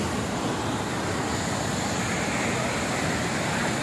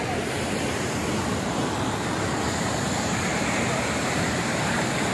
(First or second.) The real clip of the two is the first